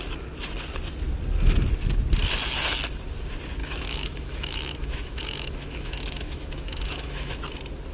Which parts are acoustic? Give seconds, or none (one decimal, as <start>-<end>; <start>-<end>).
0.0-3.6; 7.3-7.9